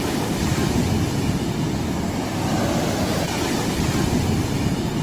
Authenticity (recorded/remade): recorded